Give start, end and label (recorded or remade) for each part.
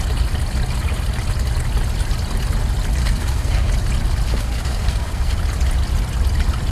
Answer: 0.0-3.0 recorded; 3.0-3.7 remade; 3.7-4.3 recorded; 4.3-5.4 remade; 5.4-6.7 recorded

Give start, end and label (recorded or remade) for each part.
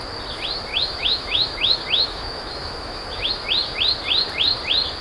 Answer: 0.0-0.7 recorded; 0.7-3.3 remade; 3.3-5.0 recorded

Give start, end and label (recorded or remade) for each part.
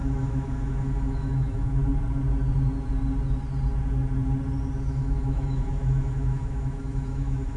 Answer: 0.0-1.8 remade; 1.8-4.9 recorded; 4.9-7.6 remade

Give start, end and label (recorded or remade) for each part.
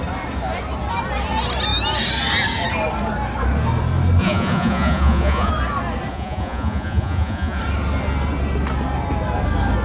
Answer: 0.0-4.2 recorded; 4.2-5.5 remade; 5.5-6.1 recorded; 6.1-7.6 remade; 7.6-9.8 recorded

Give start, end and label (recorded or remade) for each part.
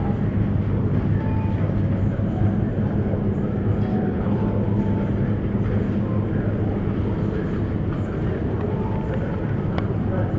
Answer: 0.0-3.9 recorded; 3.9-4.4 remade; 4.4-10.4 recorded